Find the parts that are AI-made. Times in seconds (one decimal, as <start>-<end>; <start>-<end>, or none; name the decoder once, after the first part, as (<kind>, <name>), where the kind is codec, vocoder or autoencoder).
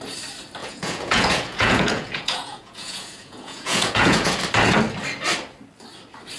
0.6-4.4 (vocoder, Vocos)